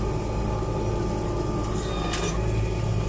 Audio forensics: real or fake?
real